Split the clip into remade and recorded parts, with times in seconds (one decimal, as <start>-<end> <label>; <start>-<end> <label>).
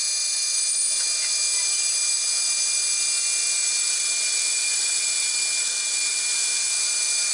0.0-4.5 recorded; 4.5-5.0 remade; 5.0-7.3 recorded